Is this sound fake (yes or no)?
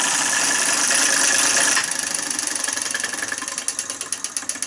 no